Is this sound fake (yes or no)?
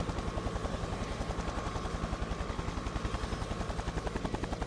no